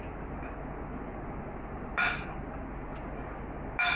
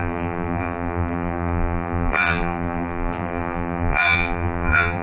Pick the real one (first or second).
first